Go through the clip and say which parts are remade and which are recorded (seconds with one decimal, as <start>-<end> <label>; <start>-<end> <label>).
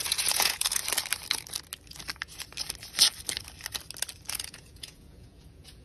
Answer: 0.0-0.8 remade; 0.8-4.3 recorded; 4.3-5.8 remade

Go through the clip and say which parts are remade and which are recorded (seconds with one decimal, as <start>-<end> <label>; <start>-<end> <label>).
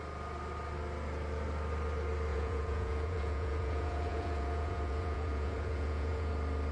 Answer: 0.0-2.3 recorded; 2.3-6.3 remade; 6.3-6.7 recorded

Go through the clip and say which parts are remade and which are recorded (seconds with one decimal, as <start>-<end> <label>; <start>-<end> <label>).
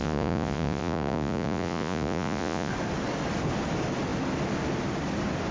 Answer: 0.0-2.7 remade; 2.7-5.5 recorded